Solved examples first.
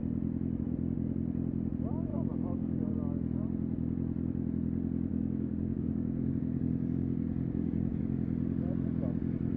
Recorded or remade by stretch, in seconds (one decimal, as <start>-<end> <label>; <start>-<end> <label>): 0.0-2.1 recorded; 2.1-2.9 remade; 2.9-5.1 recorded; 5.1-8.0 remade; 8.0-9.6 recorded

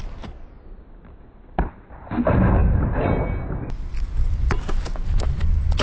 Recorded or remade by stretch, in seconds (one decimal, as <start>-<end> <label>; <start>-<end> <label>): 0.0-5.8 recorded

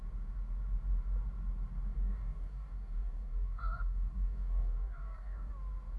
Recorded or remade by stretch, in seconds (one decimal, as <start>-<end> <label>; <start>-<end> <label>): 0.0-1.9 recorded; 1.9-5.5 remade; 5.5-6.0 recorded